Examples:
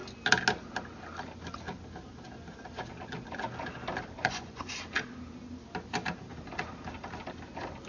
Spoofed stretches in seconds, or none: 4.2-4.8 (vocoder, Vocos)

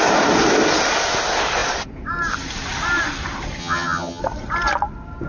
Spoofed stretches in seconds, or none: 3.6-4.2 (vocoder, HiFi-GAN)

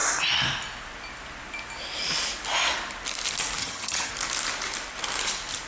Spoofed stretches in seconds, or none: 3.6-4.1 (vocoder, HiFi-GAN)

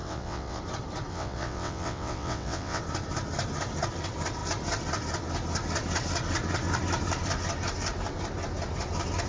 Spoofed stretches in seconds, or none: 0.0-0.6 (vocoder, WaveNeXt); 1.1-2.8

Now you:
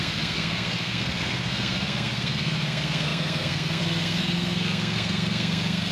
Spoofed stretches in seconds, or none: 0.0-5.9 (codec, SNAC)

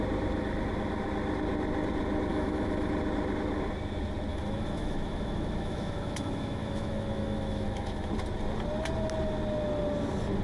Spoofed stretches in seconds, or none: 2.3-2.9 (autoencoder, DAC-VAE); 4.3-8.1